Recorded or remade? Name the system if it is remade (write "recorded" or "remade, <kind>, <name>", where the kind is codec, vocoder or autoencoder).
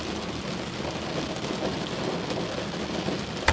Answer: recorded